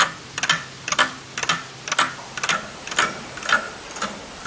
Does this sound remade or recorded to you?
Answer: recorded